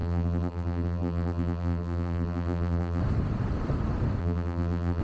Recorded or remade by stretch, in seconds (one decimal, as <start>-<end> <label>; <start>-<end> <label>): 0.0-3.0 remade; 3.0-4.2 recorded; 4.2-5.0 remade